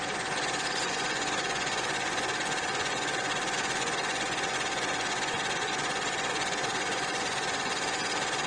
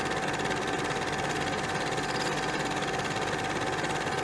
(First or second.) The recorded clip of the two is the second